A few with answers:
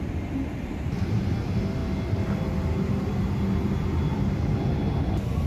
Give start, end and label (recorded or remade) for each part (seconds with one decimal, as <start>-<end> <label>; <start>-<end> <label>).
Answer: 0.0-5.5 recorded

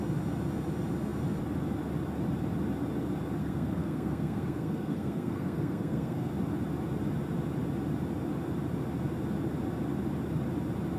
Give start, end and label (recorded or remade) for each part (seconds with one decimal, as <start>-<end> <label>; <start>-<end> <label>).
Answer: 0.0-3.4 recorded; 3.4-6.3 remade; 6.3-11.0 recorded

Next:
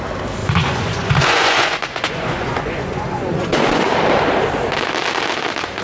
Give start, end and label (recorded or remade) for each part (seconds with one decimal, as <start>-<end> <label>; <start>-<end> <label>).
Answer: 0.0-0.4 recorded; 0.4-3.9 remade; 3.9-5.8 recorded

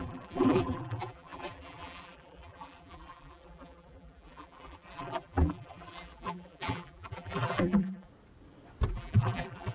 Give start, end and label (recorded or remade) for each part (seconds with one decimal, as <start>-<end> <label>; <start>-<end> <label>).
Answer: 0.0-8.1 remade; 8.1-8.9 recorded; 8.9-9.7 remade